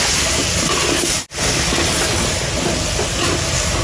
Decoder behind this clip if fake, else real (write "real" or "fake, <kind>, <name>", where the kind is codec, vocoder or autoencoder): real